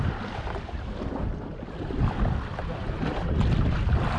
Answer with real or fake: real